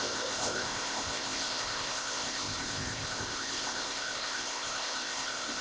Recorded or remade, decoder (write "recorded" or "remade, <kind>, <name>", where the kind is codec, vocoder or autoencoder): remade, codec, ZipCodec